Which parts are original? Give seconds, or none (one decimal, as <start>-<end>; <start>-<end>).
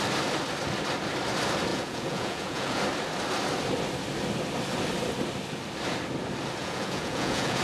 0.0-1.7; 2.8-6.6